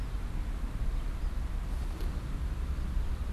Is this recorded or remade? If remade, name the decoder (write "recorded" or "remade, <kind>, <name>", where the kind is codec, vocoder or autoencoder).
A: recorded